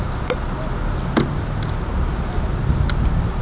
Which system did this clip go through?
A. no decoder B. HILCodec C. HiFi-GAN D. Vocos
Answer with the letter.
A